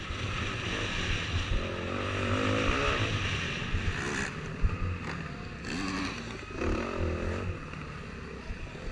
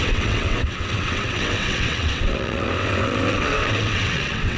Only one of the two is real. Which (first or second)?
first